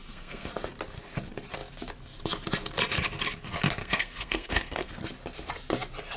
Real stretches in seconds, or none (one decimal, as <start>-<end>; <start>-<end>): 0.5-3.8; 4.9-6.2